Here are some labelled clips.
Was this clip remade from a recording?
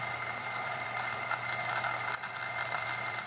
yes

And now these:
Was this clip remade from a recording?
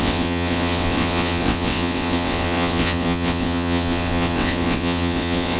yes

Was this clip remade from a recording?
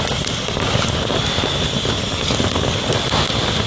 no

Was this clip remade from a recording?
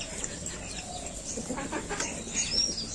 no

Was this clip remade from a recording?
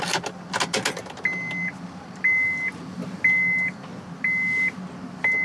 no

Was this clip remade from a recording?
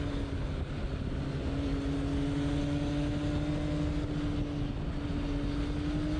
no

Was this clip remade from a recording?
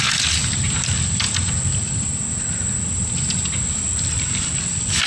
no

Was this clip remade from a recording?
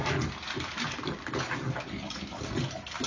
no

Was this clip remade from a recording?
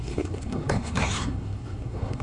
yes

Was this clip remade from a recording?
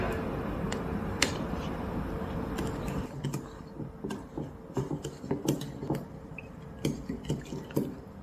yes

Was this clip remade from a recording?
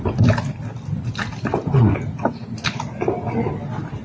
no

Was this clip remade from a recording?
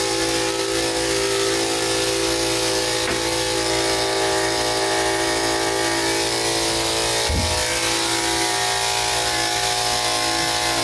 no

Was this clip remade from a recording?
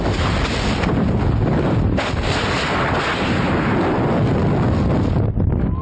no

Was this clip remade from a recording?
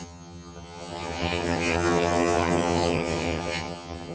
yes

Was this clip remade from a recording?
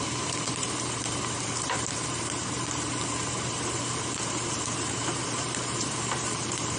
yes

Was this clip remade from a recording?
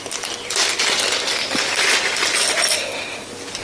no